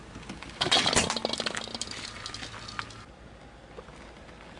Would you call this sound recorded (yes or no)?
yes